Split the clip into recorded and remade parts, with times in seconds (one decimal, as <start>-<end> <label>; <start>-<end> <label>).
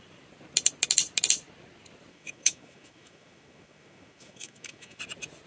0.0-2.1 recorded; 2.1-5.0 remade; 5.0-5.5 recorded